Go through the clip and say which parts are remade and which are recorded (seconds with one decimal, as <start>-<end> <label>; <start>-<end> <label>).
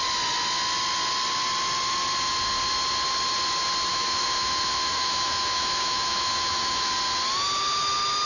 0.0-3.9 recorded; 3.9-6.9 remade; 6.9-8.3 recorded